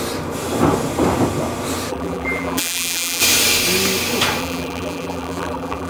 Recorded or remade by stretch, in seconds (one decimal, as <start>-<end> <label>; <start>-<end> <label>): 0.0-1.9 recorded; 1.9-3.2 remade; 3.2-4.4 recorded; 4.4-5.9 remade